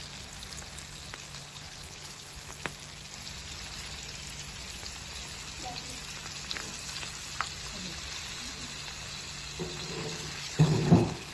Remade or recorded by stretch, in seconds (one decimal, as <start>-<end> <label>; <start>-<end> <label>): 0.0-1.4 recorded; 1.4-2.5 remade; 2.5-10.0 recorded; 10.0-11.3 remade